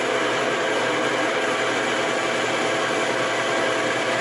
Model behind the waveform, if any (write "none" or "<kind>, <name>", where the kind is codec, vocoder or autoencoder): none